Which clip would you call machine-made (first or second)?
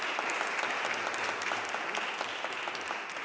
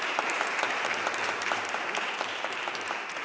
second